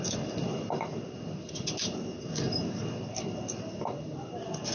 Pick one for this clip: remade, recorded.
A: recorded